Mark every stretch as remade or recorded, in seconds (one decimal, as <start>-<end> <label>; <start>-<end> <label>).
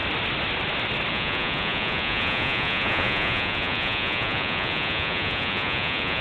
0.0-1.1 recorded; 1.1-6.2 remade